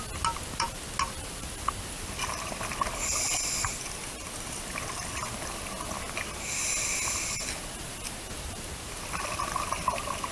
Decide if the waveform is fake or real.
real